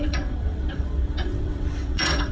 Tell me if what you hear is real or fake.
fake